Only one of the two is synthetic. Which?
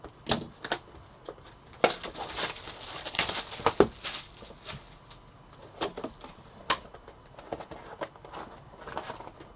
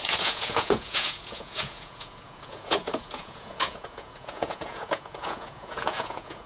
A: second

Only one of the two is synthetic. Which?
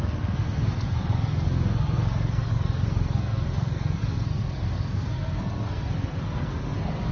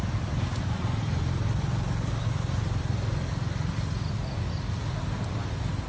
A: first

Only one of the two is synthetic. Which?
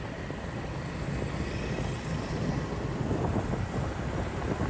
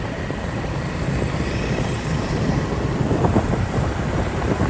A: second